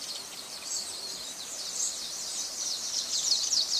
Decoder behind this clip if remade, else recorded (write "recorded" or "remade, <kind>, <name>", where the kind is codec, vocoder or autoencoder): remade, vocoder, BigVGAN v2